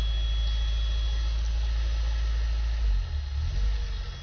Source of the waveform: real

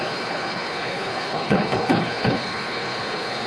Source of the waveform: fake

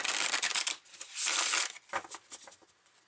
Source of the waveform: real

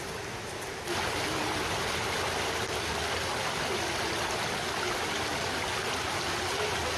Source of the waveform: real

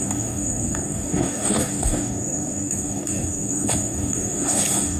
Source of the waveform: fake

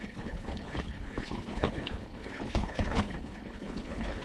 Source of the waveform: fake